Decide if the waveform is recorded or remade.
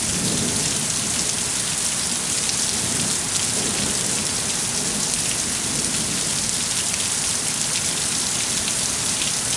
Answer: recorded